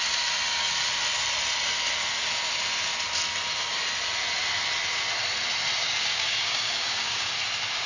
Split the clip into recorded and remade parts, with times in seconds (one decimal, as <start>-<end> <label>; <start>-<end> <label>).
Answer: 0.0-5.8 recorded; 5.8-7.3 remade; 7.3-7.9 recorded